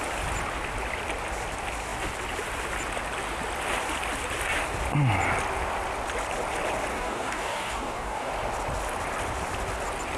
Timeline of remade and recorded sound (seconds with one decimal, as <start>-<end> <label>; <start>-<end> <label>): 0.0-6.9 recorded; 6.9-8.3 remade; 8.3-10.2 recorded